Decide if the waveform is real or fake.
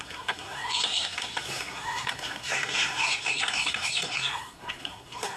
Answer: fake